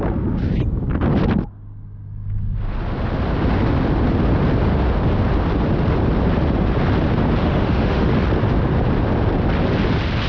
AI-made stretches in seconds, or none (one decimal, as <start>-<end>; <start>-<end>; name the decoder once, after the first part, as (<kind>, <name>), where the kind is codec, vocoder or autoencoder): 7.4-8.1 (autoencoder, DAC-VAE)